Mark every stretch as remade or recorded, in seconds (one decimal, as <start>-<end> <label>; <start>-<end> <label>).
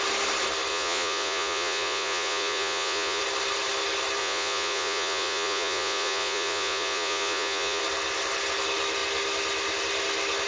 0.0-0.7 recorded; 0.7-3.2 remade; 3.2-4.2 recorded; 4.2-7.8 remade; 7.8-10.5 recorded